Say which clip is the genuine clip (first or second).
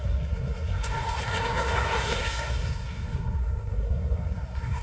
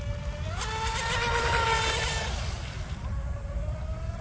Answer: second